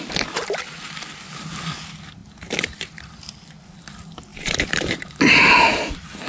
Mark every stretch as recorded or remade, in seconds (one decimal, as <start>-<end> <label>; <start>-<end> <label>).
0.0-4.3 recorded; 4.3-5.2 remade; 5.2-6.3 recorded